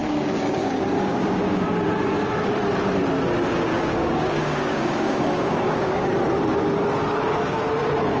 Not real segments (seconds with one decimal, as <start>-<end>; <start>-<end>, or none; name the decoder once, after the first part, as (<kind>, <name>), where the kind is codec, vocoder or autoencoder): 0.0-1.6 (codec, DAC); 3.7-6.1